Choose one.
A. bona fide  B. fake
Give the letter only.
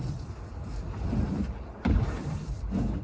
A